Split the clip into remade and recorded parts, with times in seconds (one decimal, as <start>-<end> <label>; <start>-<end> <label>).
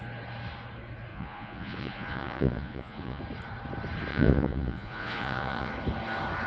0.0-1.1 recorded; 1.1-3.2 remade; 3.2-4.1 recorded; 4.1-5.7 remade; 5.7-6.5 recorded